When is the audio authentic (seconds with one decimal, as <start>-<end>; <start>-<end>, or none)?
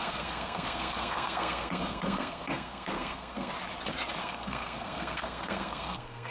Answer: 3.5-4.2